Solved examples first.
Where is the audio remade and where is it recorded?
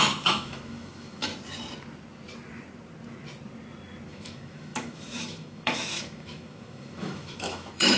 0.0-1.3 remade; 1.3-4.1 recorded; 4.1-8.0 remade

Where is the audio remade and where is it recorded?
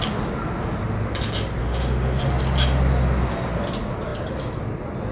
0.0-1.6 recorded; 1.6-2.2 remade; 2.2-5.1 recorded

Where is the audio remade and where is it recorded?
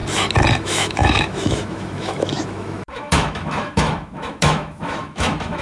0.0-0.5 recorded; 0.5-5.6 remade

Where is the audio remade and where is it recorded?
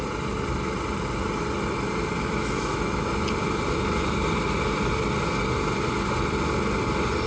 0.0-2.2 recorded; 2.2-3.1 remade; 3.1-7.3 recorded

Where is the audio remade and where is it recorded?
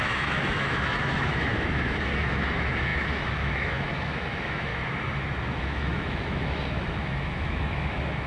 0.0-4.7 remade; 4.7-5.6 recorded; 5.6-8.3 remade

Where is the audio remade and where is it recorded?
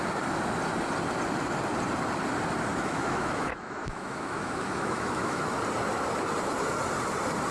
0.0-2.7 recorded; 2.7-5.6 remade; 5.6-7.5 recorded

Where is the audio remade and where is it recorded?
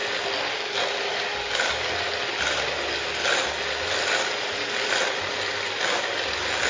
0.0-6.7 recorded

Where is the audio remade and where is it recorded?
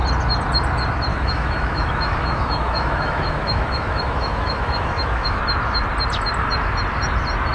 0.0-1.1 recorded; 1.1-5.4 remade; 5.4-7.5 recorded